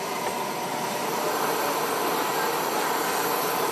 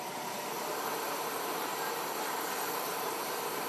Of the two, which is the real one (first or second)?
first